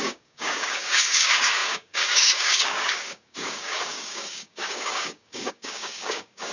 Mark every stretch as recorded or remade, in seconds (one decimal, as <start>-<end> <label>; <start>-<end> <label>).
0.0-6.5 remade